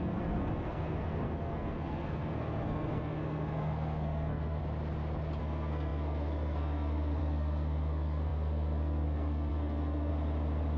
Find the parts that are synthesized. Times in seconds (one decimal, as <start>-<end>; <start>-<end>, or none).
0.0-4.6; 5.4-10.1